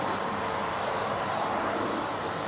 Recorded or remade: remade